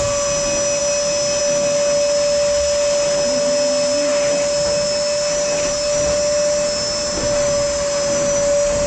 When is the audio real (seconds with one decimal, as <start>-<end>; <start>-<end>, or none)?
0.0-8.9